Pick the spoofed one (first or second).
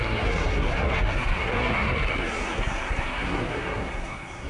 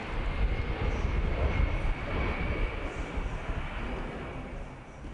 first